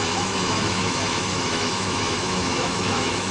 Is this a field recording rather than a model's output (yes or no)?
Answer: no